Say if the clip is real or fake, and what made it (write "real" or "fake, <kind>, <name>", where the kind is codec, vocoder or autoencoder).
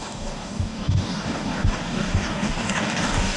fake, codec, DAC